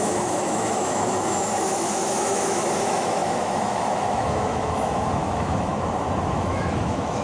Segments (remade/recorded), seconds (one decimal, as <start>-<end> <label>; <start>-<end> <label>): 0.0-5.7 remade; 5.7-6.3 recorded; 6.3-7.2 remade